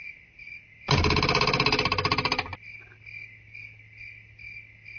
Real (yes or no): yes